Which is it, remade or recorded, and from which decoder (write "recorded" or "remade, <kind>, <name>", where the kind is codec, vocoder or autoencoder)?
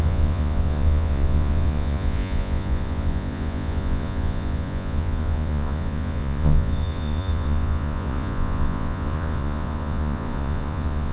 remade, vocoder, Vocos